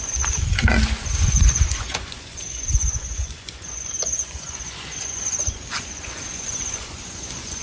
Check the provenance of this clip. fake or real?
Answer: fake